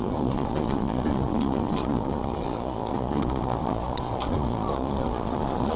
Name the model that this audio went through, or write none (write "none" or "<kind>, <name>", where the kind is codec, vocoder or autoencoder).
vocoder, Vocos